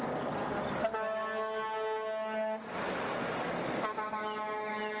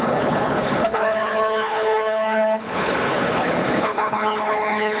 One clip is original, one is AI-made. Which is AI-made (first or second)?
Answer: second